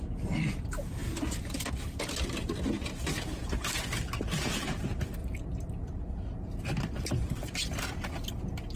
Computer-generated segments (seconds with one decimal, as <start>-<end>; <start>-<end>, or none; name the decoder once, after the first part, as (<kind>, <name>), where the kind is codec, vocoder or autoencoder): 5.2-8.3 (vocoder, BigVGAN v2)